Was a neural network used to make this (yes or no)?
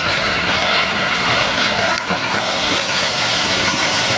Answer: yes